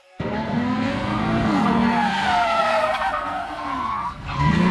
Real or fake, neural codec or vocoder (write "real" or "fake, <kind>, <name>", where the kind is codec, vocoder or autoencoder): fake, codec, SNAC